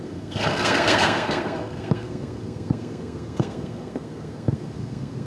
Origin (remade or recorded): remade